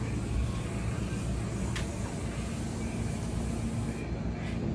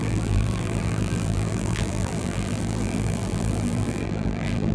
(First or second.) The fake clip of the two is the second